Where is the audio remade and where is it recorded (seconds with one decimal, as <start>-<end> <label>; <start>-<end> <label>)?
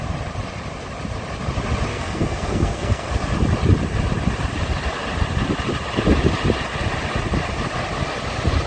0.0-1.9 recorded; 1.9-3.1 remade; 3.1-8.7 recorded